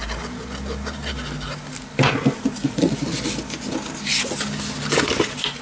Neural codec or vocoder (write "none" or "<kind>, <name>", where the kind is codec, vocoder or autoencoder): none